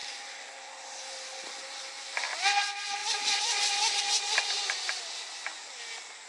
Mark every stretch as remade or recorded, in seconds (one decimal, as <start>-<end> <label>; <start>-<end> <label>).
0.0-3.0 recorded; 3.0-4.0 remade; 4.0-4.6 recorded; 4.6-5.6 remade; 5.6-6.3 recorded